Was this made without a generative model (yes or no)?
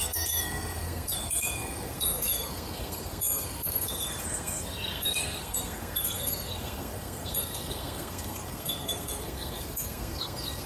no